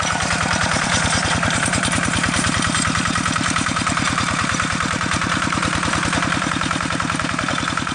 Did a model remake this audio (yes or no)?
yes